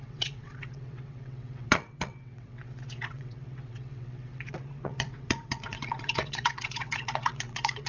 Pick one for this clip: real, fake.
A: fake